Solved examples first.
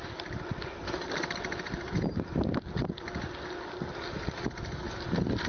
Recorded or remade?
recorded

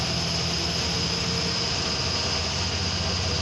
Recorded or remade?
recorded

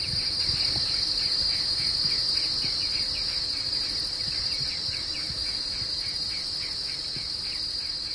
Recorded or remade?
remade